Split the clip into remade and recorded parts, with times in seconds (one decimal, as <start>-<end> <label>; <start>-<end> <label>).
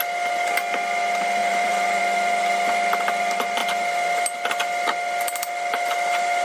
0.0-1.4 recorded; 1.4-2.0 remade; 2.0-6.4 recorded